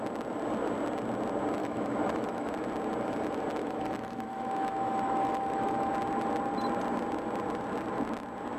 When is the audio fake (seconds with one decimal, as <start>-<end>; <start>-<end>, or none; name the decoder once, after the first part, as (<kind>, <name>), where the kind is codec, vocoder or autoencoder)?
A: 1.6-2.5 (autoencoder, DAC-VAE); 3.6-5.9